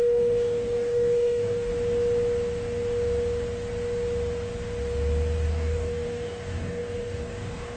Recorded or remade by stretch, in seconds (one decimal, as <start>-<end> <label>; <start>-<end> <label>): 0.0-1.7 remade; 1.7-5.5 recorded; 5.5-7.8 remade